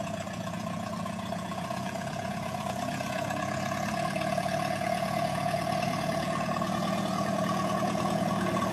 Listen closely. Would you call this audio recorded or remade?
remade